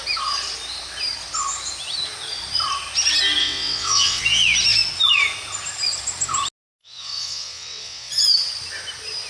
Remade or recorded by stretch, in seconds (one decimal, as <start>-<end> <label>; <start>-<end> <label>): 0.0-3.4 recorded; 3.4-4.2 remade; 4.2-6.8 recorded; 6.8-8.1 remade; 8.1-9.3 recorded